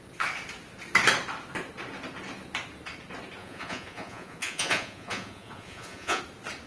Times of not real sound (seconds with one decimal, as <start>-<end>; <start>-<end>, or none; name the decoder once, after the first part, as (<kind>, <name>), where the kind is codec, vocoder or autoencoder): 3.4-6.2 (vocoder, Vocos)